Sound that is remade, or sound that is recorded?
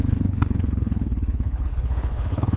remade